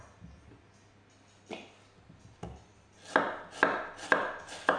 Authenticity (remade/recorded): recorded